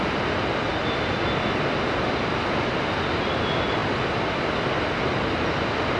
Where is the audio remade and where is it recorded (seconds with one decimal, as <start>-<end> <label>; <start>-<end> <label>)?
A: 0.0-6.0 recorded